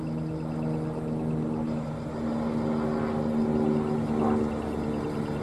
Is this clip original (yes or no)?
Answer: yes